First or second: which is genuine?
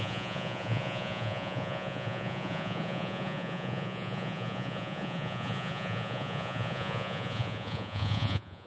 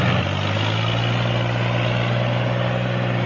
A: second